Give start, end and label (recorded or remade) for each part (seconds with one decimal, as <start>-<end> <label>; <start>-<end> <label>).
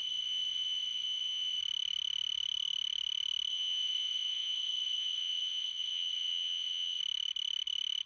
0.0-1.6 remade; 1.6-3.5 recorded; 3.5-7.0 remade; 7.0-8.1 recorded